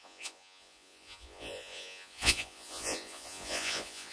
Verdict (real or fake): fake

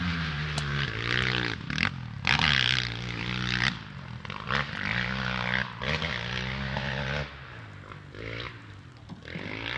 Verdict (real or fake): real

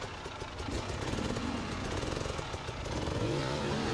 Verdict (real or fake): fake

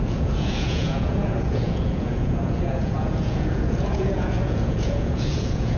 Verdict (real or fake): fake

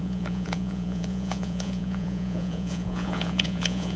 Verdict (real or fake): fake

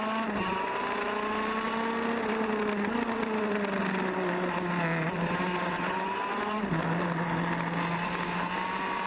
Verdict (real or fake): real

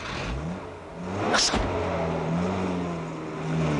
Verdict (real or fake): real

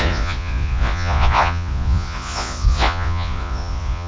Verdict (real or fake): fake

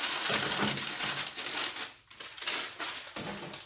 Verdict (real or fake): real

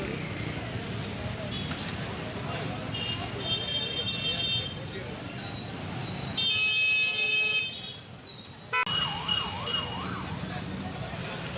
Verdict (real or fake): real